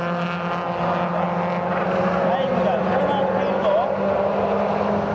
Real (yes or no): yes